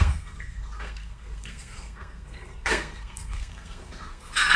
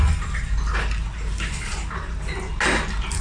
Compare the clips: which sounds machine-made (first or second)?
first